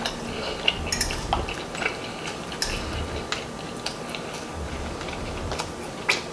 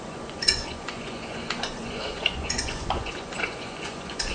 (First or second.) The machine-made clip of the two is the second